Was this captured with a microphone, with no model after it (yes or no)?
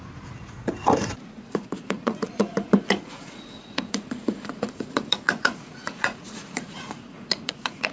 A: no